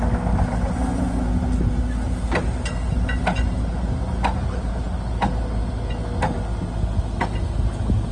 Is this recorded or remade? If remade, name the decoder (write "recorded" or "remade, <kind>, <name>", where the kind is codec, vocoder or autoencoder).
recorded